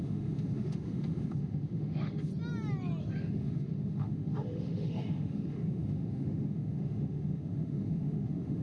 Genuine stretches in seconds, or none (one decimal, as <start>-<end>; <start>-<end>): 2.3-3.0